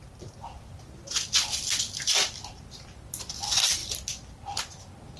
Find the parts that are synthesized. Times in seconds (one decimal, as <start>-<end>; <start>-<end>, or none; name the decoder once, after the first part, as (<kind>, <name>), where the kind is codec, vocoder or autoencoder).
none

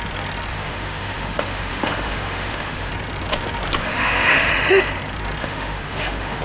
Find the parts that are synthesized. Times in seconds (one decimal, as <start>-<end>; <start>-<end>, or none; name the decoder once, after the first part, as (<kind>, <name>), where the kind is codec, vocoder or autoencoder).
0.5-2.9 (autoencoder, DAC-VAE); 3.8-4.5; 5.4-6.4

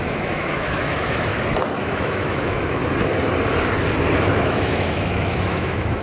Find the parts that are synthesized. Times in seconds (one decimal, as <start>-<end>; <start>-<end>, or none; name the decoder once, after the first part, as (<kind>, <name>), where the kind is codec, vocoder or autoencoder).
0.0-1.3 (autoencoder, DAC-VAE); 1.8-2.8; 4.2-6.0

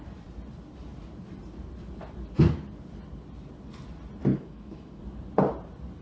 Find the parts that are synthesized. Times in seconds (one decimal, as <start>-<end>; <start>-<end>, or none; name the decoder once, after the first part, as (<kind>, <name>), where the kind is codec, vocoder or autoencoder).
4.3-5.0 (autoencoder, DAC-VAE)

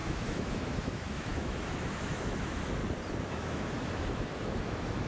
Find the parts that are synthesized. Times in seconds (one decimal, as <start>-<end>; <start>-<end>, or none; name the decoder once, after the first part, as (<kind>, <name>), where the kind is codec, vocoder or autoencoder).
0.0-2.8 (autoencoder, DAC-VAE); 3.3-5.1